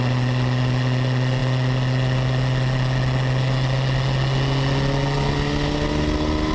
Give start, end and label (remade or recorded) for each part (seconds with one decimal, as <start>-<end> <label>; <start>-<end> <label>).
0.0-6.5 recorded